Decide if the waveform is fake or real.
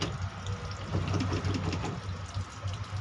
real